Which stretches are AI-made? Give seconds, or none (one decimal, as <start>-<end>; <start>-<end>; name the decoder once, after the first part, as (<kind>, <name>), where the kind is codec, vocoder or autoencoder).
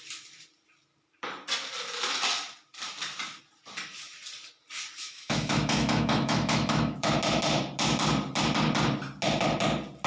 5.0-7.1 (autoencoder, DAC-VAE)